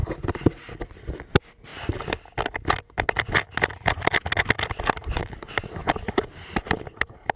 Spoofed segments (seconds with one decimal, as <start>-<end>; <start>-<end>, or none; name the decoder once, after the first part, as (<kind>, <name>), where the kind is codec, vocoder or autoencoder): none